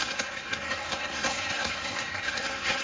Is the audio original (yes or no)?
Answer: no